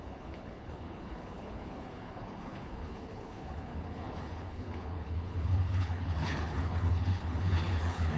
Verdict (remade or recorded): remade